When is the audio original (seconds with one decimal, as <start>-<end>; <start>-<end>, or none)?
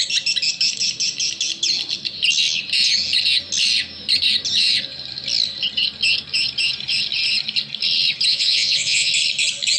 0.0-8.3; 9.1-9.8